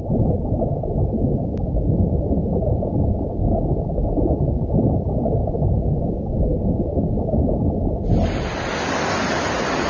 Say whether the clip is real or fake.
real